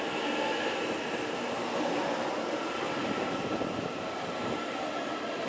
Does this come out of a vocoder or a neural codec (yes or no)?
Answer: no